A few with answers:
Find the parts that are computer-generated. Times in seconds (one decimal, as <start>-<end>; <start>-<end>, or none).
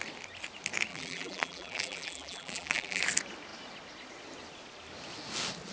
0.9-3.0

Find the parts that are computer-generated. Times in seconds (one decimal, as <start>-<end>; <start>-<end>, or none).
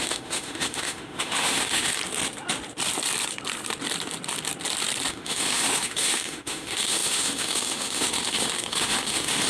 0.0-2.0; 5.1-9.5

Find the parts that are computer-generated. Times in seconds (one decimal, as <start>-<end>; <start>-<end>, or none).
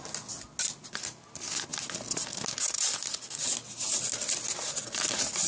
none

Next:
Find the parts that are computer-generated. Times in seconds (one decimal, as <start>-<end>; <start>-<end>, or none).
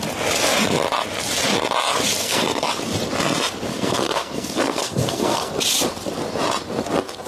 2.2-2.7; 3.7-5.5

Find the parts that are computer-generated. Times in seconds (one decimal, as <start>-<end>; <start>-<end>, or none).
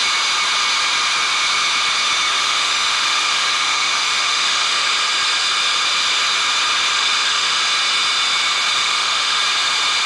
2.4-4.9; 6.9-7.6; 8.8-9.4